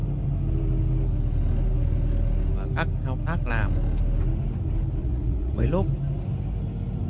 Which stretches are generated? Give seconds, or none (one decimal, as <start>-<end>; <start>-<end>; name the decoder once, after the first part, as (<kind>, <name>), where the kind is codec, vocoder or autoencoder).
5.0-5.7 (vocoder, Vocos)